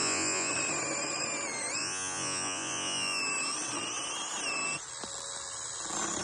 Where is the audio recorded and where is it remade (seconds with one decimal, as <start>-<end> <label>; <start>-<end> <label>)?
0.0-0.5 remade; 0.5-1.8 recorded; 1.8-3.2 remade; 3.2-6.2 recorded